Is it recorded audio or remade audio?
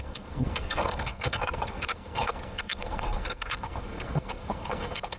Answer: remade